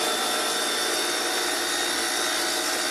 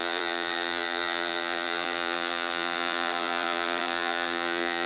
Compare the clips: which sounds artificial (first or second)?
second